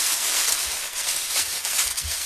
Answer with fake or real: fake